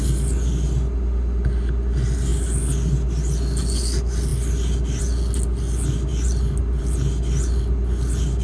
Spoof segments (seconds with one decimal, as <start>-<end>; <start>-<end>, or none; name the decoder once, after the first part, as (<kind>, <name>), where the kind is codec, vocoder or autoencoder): none